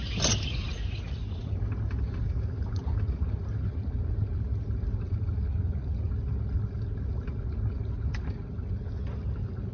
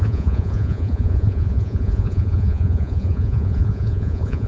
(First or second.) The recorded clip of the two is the first